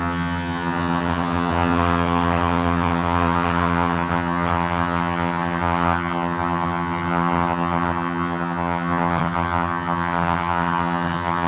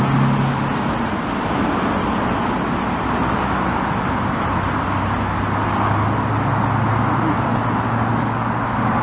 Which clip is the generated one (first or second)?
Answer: first